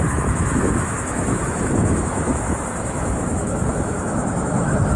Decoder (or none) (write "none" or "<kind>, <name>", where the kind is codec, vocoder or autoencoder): autoencoder, DAC-VAE